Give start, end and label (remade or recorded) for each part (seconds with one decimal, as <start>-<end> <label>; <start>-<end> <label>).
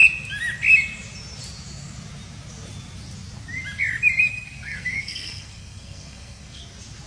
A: 0.0-4.3 recorded; 4.3-6.6 remade; 6.6-7.1 recorded